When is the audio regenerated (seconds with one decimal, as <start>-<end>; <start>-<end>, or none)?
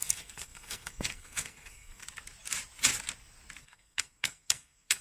0.0-2.0; 3.6-5.0